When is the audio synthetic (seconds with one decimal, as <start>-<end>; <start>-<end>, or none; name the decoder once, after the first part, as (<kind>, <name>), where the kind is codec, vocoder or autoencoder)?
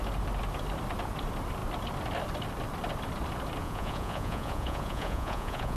3.6-5.8 (vocoder, Vocos)